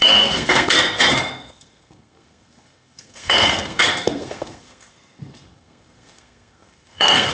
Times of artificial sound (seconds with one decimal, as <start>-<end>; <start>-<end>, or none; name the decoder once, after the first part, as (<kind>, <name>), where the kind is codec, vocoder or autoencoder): 0.0-7.3 (codec, SNAC)